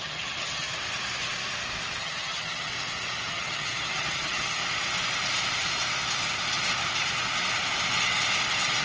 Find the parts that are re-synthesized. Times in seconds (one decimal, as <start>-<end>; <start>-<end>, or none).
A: 0.0-0.7; 2.0-2.7; 3.3-4.6